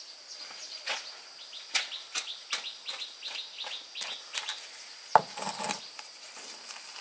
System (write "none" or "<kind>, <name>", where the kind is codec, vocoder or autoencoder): none